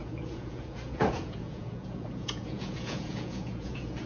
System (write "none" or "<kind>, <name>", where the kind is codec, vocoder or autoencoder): vocoder, Vocos